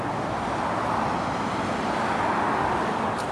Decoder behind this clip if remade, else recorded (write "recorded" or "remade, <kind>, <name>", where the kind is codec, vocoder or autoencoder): recorded